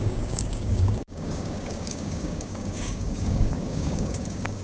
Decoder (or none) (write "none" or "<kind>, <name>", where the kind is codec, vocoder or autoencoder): codec, DAC